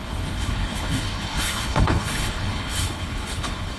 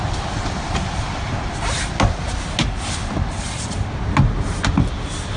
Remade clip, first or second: first